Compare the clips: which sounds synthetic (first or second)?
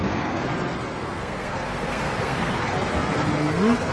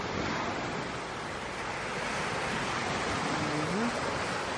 first